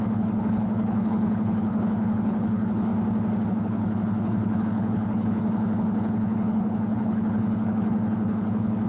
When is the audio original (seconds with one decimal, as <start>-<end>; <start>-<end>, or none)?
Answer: 2.9-3.5